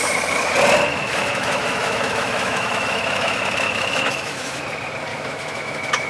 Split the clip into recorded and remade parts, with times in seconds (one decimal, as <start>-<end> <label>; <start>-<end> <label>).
0.0-0.9 recorded; 0.9-4.6 remade; 4.6-5.1 recorded; 5.1-6.1 remade